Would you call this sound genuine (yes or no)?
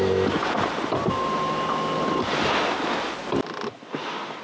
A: yes